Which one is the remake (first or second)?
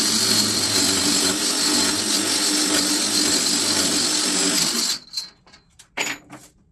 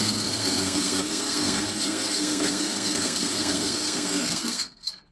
second